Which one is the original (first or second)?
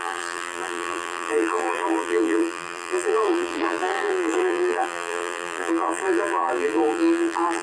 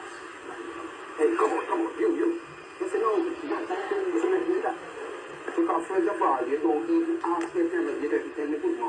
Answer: second